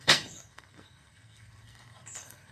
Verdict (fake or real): fake